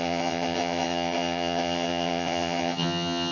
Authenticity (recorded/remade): remade